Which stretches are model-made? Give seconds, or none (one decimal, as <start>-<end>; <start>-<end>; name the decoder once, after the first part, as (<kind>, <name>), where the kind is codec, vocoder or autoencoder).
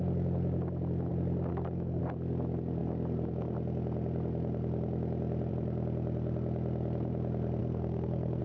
1.5-2.0 (codec, SNAC); 7.6-8.4